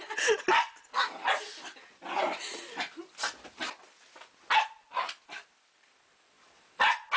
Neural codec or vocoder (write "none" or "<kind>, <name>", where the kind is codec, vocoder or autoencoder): none